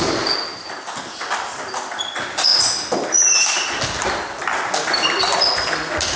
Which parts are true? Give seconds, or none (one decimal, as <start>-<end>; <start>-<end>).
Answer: 0.0-6.2

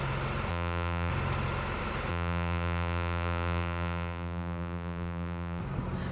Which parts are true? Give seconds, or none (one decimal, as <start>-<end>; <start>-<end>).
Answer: 0.0-0.5; 1.1-2.1; 5.6-6.1

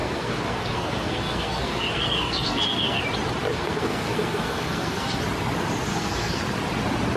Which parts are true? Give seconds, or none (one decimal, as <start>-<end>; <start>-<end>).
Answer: 3.0-3.5; 5.2-5.9; 6.4-7.2

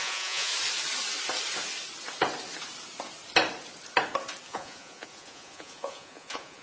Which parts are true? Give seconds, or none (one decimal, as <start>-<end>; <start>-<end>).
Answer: 0.5-4.5

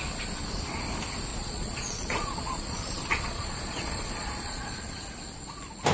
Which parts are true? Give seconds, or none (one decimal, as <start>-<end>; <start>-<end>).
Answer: 0.0-1.3; 4.8-5.9

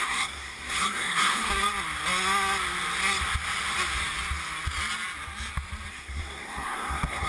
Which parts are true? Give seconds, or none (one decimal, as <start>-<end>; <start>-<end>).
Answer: 1.5-5.9

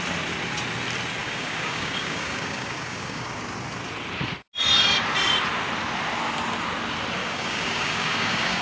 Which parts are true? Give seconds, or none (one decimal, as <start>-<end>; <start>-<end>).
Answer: 0.0-1.2; 3.4-7.2